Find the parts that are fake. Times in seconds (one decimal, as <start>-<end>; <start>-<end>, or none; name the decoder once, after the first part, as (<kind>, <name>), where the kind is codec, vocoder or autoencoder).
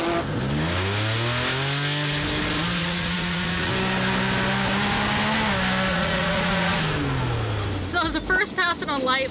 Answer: 2.8-3.7 (vocoder, Vocos); 5.9-6.8